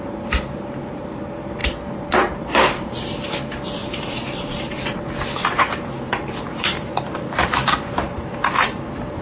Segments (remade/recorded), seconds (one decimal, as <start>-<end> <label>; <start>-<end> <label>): 0.0-1.6 remade; 1.6-2.2 recorded; 2.2-3.8 remade; 3.8-4.6 recorded; 4.6-9.2 remade